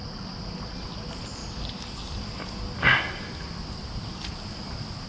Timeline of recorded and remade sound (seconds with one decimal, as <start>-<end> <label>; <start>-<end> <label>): 0.0-5.1 recorded